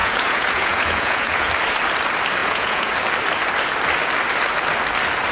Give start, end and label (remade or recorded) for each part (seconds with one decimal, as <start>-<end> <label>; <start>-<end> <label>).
0.0-1.5 remade; 1.5-2.4 recorded; 2.4-2.9 remade; 2.9-5.3 recorded

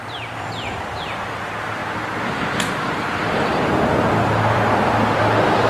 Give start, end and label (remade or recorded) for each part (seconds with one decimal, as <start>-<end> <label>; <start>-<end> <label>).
0.0-1.8 remade; 1.8-2.7 recorded; 2.7-5.7 remade

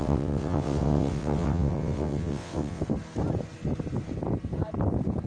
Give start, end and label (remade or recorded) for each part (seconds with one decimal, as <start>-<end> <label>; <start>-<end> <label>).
0.0-2.8 remade; 2.8-5.3 recorded

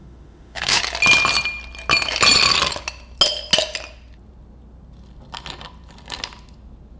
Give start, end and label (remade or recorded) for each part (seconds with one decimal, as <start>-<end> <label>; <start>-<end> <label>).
0.0-0.8 remade; 0.8-7.0 recorded

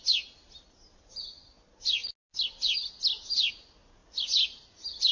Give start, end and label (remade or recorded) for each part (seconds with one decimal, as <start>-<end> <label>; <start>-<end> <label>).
0.0-5.1 recorded

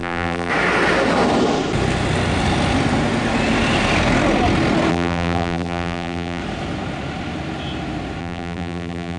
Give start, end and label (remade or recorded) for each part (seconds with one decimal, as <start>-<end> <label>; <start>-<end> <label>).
0.0-0.5 remade; 0.5-4.9 recorded; 4.9-6.4 remade; 6.4-8.2 recorded; 8.2-9.2 remade

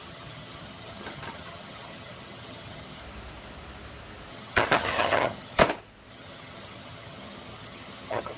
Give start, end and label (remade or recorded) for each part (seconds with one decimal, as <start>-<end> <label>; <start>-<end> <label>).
0.0-3.0 remade; 3.0-4.3 recorded; 4.3-5.6 remade; 5.6-6.1 recorded; 6.1-8.4 remade

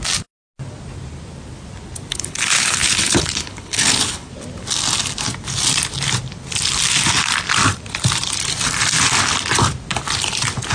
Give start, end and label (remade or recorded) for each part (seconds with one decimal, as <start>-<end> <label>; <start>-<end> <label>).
0.0-2.1 recorded; 2.1-4.3 remade; 4.3-10.7 recorded